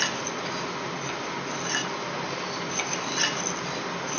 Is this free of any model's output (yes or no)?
yes